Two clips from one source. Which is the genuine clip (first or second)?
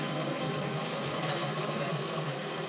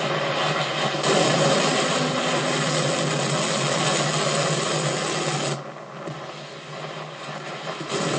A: second